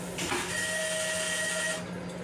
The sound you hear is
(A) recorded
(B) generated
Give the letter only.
A